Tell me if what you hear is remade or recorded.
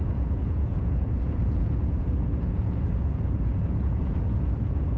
remade